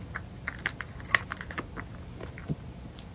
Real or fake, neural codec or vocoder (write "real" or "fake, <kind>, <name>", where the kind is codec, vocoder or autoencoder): real